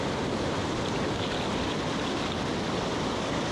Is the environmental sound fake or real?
real